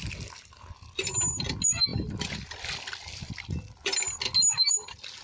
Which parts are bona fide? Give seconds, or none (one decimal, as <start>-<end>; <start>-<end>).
0.0-5.2